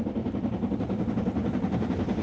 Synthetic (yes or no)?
no